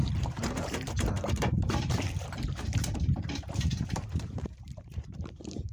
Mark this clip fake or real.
fake